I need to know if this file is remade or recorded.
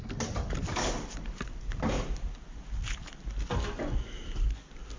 recorded